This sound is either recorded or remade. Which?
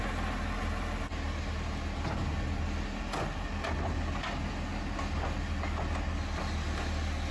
recorded